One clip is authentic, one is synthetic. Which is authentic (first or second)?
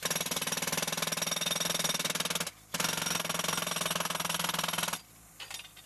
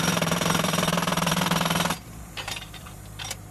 first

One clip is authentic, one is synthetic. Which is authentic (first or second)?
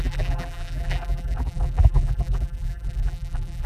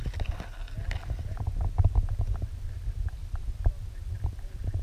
second